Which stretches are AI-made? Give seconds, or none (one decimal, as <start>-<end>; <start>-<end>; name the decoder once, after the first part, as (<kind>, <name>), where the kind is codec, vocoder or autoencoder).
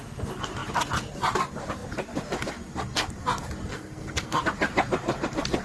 3.7-4.4 (codec, SNAC)